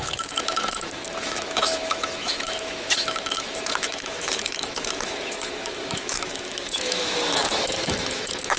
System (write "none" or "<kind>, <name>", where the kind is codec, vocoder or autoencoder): autoencoder, DAC-VAE